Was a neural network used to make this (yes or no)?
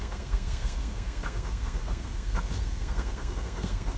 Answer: yes